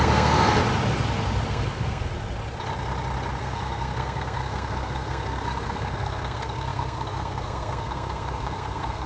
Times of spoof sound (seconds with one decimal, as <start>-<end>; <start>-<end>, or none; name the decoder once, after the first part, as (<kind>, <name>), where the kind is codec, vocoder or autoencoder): 0.0-0.6 (codec, SNAC); 1.5-2.1; 3.4-9.1